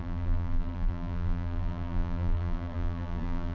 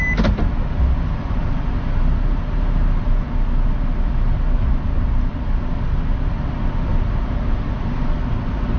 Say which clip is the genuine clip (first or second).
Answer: second